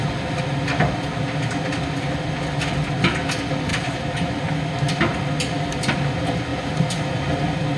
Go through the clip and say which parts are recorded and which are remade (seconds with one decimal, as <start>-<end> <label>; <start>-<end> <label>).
0.0-6.5 recorded; 6.5-7.3 remade; 7.3-7.8 recorded